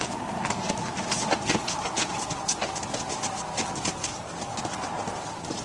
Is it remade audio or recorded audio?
recorded